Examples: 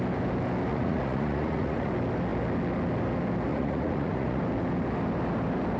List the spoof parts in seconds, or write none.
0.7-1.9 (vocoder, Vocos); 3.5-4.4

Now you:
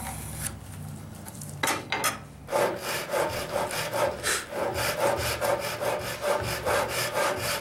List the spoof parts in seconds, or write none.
none

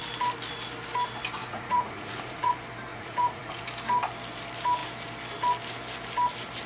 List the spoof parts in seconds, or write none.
1.4-2.5 (vocoder, Vocos); 2.9-3.6

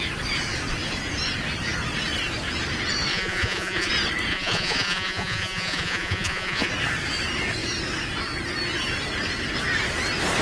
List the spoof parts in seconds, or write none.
3.1-3.9 (vocoder, Vocos); 4.3-6.7

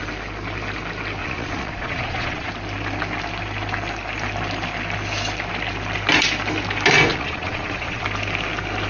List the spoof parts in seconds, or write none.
1.2-2.5 (vocoder, Vocos); 7.1-8.0

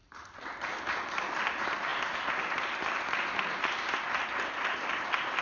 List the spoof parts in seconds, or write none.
none